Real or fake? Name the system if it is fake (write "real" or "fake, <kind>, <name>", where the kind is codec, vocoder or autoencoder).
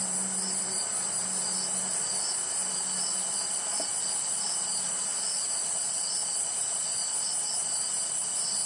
real